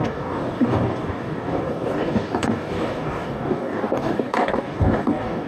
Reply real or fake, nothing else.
fake